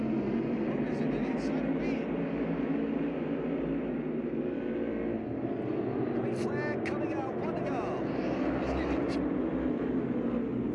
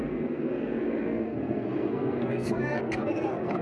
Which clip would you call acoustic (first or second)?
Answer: first